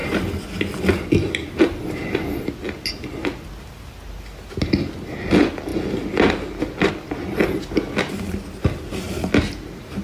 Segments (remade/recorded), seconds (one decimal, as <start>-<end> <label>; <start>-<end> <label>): 0.0-2.4 remade; 2.4-10.0 recorded